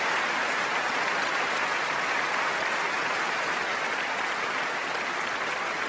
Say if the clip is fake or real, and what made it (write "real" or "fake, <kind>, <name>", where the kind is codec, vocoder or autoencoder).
real